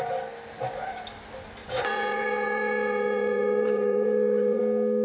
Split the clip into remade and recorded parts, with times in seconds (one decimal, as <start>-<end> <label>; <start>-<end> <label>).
0.0-1.6 recorded; 1.6-4.6 remade; 4.6-5.0 recorded